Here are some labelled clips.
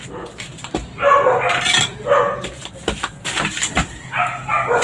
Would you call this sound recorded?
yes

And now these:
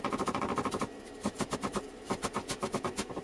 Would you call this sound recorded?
no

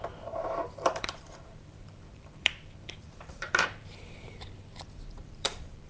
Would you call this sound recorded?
no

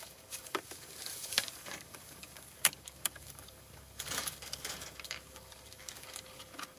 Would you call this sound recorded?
no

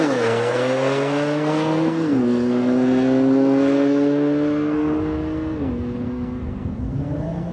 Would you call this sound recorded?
no